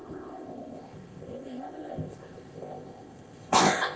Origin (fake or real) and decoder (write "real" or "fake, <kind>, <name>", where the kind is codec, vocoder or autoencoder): fake, codec, ZipCodec